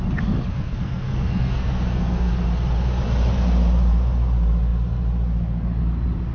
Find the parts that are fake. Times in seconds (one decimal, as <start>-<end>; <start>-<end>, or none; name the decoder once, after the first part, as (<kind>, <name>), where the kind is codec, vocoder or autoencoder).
0.5-2.3 (codec, SNAC)